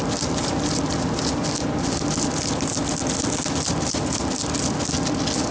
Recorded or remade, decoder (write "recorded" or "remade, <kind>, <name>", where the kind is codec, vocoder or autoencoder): recorded